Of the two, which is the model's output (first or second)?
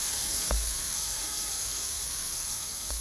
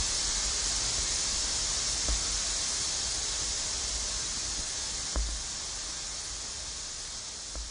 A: first